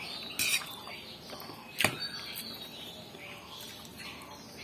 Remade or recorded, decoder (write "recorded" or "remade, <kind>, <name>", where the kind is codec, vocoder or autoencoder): recorded